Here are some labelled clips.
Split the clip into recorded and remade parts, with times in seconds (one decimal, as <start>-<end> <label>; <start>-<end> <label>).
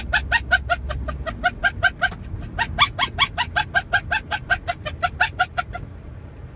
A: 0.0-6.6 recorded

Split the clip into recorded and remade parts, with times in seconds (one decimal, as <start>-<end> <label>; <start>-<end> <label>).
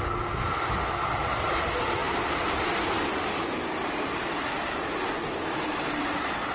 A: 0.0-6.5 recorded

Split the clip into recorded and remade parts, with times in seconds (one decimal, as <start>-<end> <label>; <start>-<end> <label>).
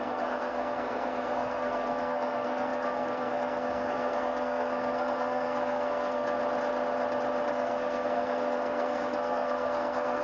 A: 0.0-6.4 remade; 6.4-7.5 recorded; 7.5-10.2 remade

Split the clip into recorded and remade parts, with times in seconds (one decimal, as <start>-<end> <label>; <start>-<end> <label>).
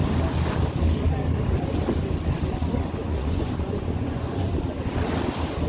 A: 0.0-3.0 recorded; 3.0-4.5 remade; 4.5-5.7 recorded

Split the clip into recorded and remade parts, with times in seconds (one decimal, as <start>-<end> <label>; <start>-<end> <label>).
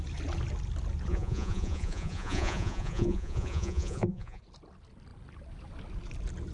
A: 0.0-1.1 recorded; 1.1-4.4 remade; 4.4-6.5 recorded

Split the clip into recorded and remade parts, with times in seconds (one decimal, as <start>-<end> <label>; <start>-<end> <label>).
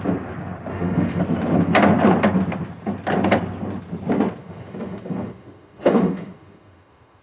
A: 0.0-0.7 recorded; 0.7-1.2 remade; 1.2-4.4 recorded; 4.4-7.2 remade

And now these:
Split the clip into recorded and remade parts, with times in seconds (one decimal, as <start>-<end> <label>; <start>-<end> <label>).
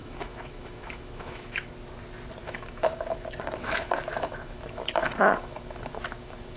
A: 0.0-1.7 remade; 1.7-2.4 recorded; 2.4-6.6 remade